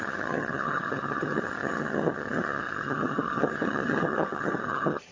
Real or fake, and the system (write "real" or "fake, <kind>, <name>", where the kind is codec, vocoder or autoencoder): fake, vocoder, HiFi-GAN